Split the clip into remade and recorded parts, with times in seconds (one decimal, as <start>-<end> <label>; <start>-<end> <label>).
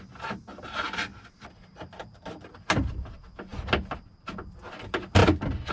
0.0-5.7 recorded